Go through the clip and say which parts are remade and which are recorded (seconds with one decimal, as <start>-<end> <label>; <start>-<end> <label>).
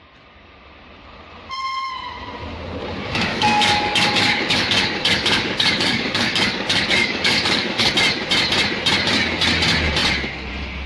0.0-3.3 recorded; 3.3-7.9 remade; 7.9-10.9 recorded